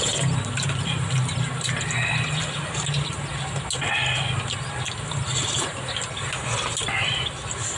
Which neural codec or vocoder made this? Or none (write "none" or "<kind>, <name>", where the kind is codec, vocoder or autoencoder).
none